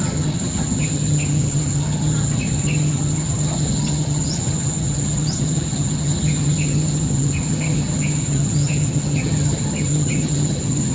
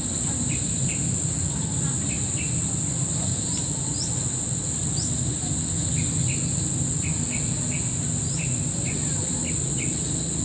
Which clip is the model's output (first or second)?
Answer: first